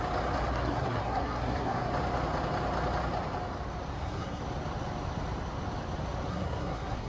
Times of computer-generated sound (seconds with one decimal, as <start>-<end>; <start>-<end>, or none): 0.5-1.9; 3.9-4.4; 6.3-7.1